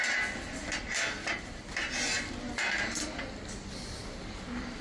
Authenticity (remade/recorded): recorded